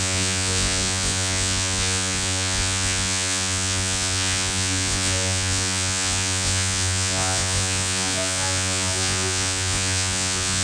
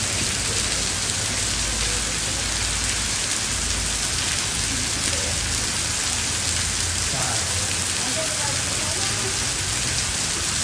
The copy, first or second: first